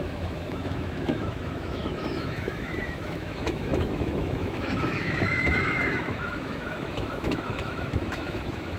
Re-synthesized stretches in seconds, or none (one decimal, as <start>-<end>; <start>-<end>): 0.0-8.8